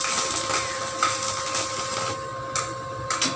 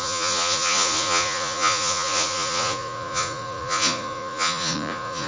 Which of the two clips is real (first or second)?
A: first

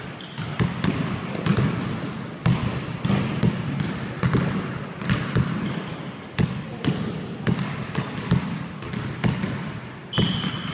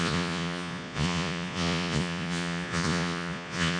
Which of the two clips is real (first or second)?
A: first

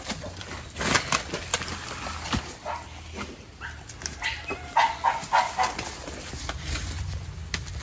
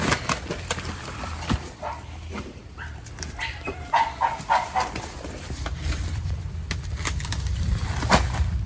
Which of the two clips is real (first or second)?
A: first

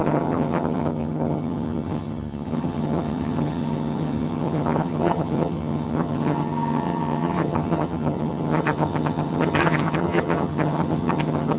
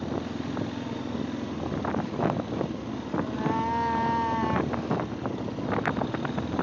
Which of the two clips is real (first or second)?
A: second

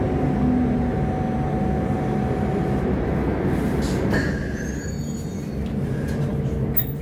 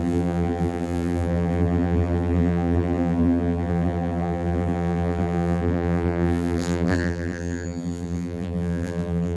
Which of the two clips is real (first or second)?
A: first